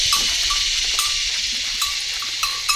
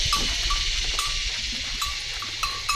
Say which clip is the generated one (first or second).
first